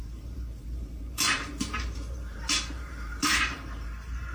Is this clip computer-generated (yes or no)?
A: yes